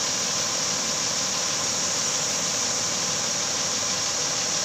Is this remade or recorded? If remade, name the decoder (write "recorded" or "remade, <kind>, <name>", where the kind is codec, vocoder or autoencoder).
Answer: recorded